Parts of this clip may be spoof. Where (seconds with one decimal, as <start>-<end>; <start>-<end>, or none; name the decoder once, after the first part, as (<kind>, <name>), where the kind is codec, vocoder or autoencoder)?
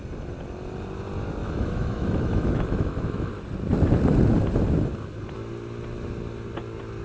1.4-3.3 (autoencoder, DAC-VAE)